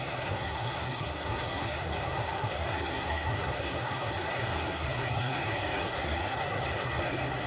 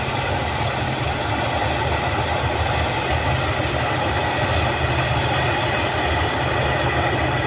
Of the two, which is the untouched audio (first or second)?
second